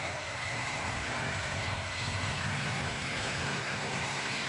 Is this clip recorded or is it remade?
remade